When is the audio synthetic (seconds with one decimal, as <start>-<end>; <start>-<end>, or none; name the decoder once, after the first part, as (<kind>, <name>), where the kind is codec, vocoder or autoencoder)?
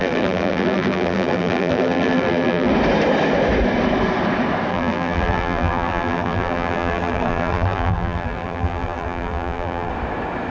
0.0-2.7 (vocoder, BigVGAN v2); 4.7-9.9